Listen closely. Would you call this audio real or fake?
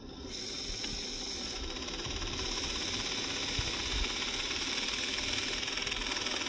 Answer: real